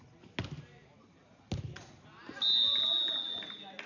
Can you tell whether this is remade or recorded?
recorded